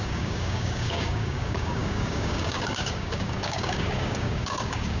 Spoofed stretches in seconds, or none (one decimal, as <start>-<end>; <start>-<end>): 0.0-5.0